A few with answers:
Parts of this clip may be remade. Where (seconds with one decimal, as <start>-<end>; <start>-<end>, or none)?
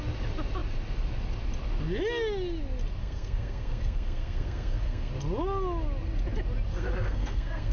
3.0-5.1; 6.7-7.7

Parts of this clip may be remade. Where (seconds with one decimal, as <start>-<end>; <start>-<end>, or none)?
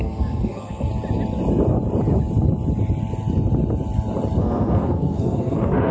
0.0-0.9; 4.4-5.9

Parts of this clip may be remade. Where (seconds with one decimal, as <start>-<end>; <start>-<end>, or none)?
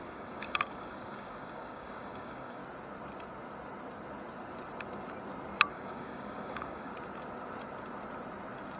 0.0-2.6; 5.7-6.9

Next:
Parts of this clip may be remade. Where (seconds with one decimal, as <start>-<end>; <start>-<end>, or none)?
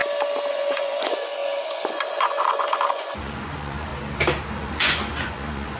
0.5-3.9; 4.5-5.8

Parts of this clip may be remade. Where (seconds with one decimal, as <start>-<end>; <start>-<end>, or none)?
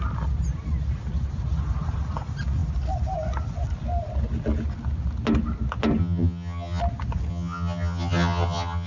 6.0-6.8; 7.3-8.9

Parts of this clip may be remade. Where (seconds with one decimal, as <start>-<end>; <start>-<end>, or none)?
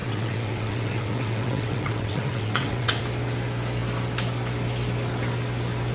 0.0-3.0